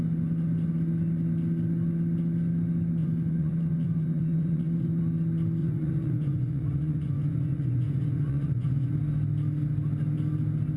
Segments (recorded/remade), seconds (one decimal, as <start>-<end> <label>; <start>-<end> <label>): 0.0-3.0 recorded; 3.0-5.0 remade; 5.0-5.6 recorded; 5.6-8.9 remade; 8.9-10.8 recorded